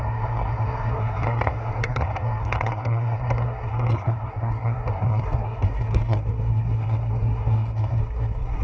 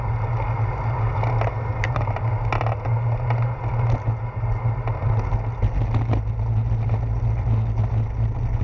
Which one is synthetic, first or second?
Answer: first